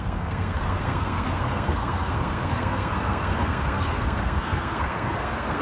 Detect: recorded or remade remade